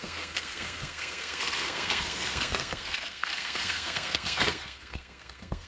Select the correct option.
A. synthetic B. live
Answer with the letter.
A